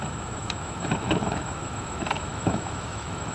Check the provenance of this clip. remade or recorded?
remade